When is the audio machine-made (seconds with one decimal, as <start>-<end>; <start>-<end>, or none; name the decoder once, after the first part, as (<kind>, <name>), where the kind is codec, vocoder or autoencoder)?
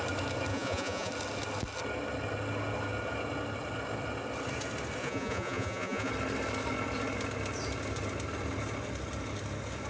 0.5-1.1 (vocoder, Vocos); 5.0-6.1